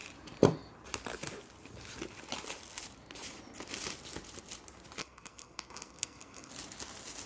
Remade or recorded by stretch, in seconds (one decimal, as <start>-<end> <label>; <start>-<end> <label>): 0.0-5.0 recorded; 5.0-6.5 remade; 6.5-7.3 recorded